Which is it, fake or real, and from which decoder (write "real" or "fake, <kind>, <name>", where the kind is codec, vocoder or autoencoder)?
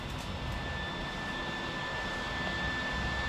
real